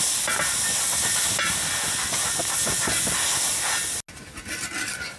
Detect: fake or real real